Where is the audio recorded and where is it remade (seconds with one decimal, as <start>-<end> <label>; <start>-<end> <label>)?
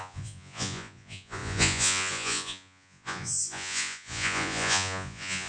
0.0-5.5 remade